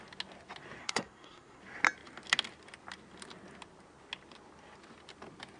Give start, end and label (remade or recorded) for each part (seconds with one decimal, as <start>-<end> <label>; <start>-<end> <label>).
0.0-0.8 recorded; 0.8-1.6 remade; 1.6-5.6 recorded